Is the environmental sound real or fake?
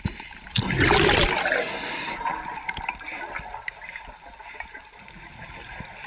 real